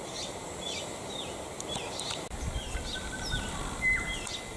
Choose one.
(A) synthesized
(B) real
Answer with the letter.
B